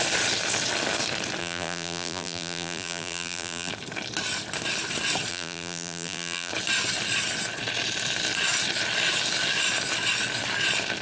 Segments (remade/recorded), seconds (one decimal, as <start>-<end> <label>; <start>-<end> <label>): 0.0-1.4 recorded; 1.4-3.7 remade; 3.7-5.3 recorded; 5.3-6.5 remade; 6.5-11.0 recorded